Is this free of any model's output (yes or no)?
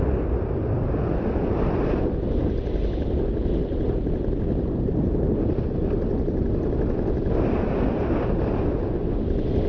yes